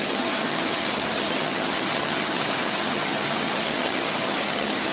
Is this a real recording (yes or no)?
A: no